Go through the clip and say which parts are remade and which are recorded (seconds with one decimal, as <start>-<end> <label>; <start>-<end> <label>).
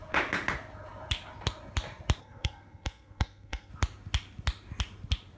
0.0-2.2 recorded; 2.2-3.7 remade; 3.7-5.4 recorded